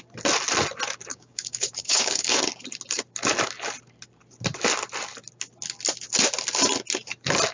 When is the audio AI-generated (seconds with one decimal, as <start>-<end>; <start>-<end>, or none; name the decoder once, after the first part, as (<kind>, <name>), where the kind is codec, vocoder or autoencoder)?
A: 1.1-2.4 (codec, DAC)

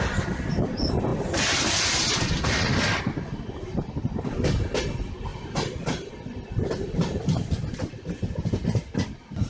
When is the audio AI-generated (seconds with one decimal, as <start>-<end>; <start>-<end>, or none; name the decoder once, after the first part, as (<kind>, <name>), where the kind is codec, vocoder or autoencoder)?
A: 5.3-6.1 (vocoder, BigVGAN v2)

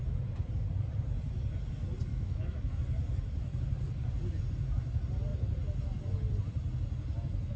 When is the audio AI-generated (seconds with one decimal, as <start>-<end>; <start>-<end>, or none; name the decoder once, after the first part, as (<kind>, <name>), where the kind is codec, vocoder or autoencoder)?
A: 2.1-2.7 (autoencoder, DAC-VAE)

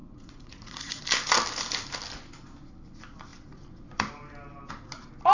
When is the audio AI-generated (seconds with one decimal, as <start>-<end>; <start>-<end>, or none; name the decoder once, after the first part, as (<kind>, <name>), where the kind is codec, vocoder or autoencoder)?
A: 0.0-1.0 (vocoder, Vocos)

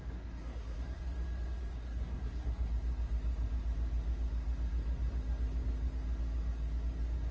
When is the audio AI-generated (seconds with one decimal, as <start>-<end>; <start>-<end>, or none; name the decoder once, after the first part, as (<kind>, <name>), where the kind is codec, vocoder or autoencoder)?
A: 0.0-1.0 (codec, SNAC); 1.7-2.7

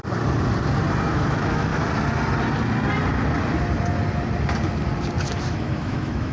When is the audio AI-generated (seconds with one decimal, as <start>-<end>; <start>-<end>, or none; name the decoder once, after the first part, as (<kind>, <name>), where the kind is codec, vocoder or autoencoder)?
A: 1.1-1.7 (autoencoder, DAC-VAE); 5.5-6.3

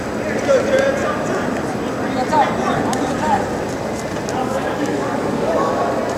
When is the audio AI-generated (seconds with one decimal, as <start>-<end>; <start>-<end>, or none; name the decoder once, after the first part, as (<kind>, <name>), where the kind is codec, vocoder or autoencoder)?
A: 4.4-5.7 (codec, DAC)

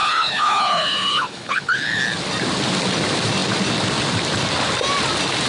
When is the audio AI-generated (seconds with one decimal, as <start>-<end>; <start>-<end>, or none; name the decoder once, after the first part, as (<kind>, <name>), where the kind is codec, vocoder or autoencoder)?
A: 0.0-2.0 (codec, HILCodec)